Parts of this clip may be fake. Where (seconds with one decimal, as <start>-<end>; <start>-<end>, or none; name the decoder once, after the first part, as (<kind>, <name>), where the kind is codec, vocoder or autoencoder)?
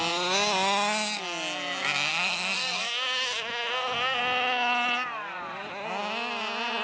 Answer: 2.1-4.2 (codec, DAC)